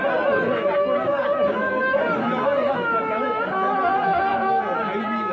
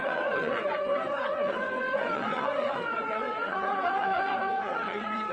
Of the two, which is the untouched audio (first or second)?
first